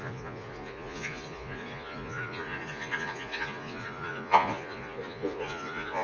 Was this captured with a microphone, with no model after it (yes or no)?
no